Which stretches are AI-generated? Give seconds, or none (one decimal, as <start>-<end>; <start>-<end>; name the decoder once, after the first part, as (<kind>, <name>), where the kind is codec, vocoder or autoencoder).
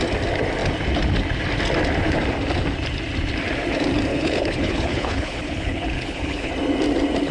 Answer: 4.1-6.5 (codec, HILCodec)